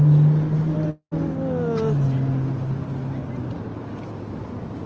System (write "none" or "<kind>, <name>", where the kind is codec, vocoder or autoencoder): none